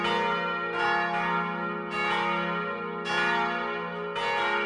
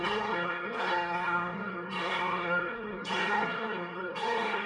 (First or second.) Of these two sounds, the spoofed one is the second